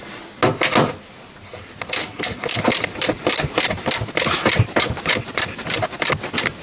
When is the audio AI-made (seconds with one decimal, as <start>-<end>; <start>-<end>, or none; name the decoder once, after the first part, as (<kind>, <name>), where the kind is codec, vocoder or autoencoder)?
2.0-2.6 (codec, SNAC)